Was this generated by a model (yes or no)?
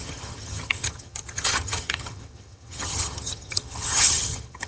yes